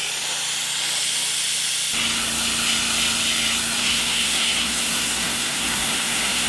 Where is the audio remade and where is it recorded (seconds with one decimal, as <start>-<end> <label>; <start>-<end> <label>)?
0.0-3.8 recorded; 3.8-6.5 remade